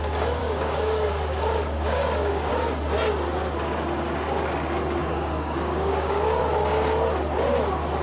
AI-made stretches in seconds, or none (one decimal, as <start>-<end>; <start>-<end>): 0.4-2.5; 5.0-6.4